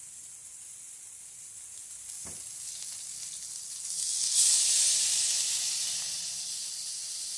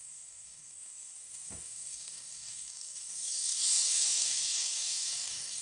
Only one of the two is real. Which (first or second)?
first